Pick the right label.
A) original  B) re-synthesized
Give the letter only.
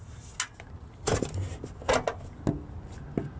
A